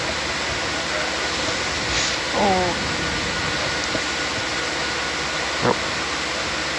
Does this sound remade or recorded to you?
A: recorded